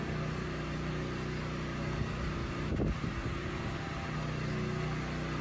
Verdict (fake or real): real